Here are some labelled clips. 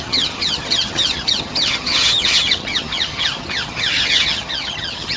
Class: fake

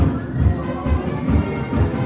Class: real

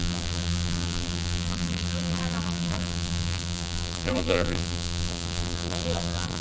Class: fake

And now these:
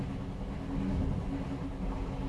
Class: real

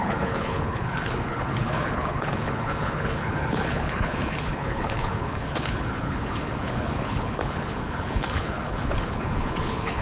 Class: fake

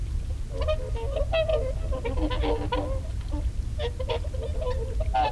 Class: real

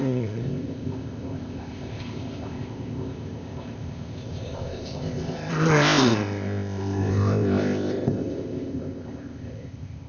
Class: fake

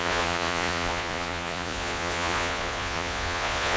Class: fake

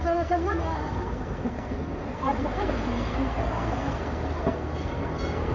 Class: fake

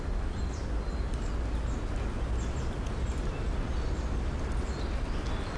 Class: real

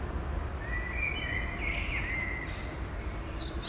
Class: real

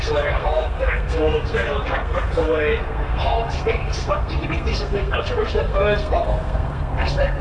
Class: fake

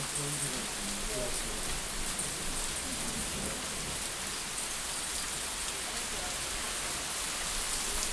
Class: real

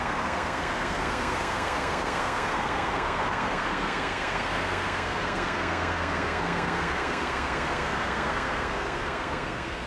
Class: fake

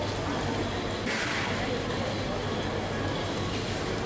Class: real